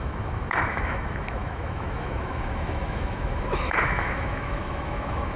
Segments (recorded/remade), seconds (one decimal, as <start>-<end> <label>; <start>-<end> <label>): 0.0-5.4 remade